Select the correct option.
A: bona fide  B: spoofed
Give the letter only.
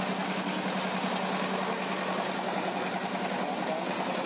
A